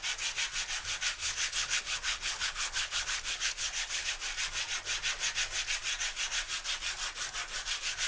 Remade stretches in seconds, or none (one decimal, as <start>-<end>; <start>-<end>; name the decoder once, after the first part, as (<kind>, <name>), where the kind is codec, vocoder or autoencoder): 1.2-4.1 (codec, HILCodec)